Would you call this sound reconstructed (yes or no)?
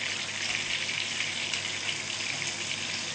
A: no